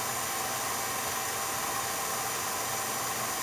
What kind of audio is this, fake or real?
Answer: real